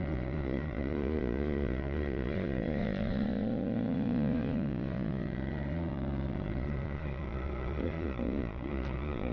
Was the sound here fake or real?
fake